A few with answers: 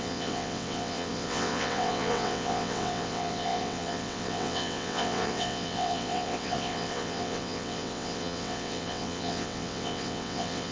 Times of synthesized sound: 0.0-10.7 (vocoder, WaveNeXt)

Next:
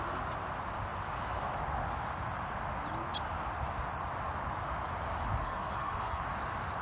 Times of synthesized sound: 5.4-6.2 (codec, SNAC)

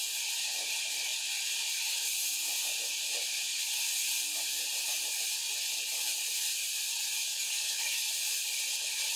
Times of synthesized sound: 7.3-8.1 (codec, DAC)

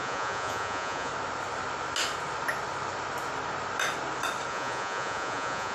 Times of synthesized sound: 0.0-1.1 (vocoder, Vocos); 4.5-5.7

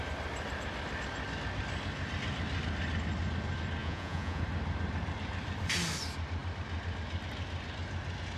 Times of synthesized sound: 3.8-4.4 (vocoder, Vocos)

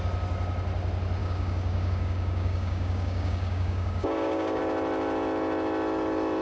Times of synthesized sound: 1.2-4.6 (codec, DAC)